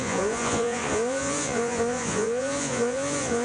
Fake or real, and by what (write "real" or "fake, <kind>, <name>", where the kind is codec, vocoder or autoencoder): fake, vocoder, Vocos